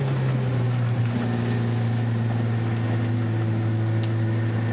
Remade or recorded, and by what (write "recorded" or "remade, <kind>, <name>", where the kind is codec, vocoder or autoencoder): recorded